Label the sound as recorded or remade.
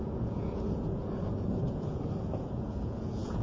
remade